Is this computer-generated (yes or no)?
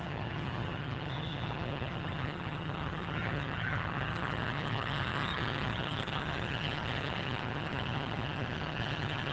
yes